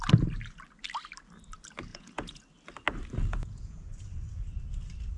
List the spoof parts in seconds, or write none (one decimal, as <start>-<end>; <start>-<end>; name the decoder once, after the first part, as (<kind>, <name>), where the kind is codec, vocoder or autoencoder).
1.9-2.4 (vocoder, Vocos); 3.3-3.9